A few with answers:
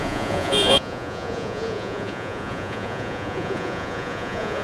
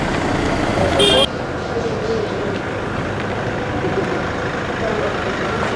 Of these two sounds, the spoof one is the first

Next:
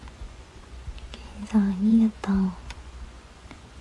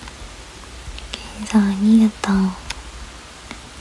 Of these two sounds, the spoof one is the first